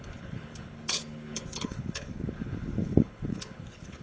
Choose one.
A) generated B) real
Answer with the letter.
A